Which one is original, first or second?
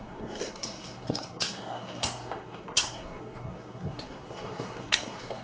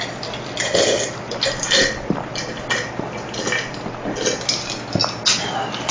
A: second